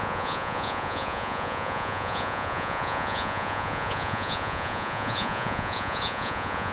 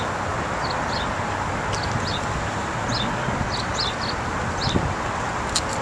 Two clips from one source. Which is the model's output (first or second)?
first